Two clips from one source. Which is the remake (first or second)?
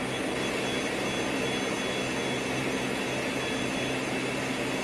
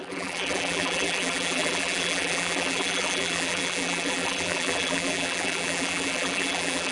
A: second